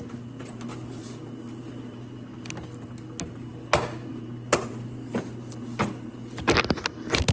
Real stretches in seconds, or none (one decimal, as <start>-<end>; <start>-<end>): 0.0-7.3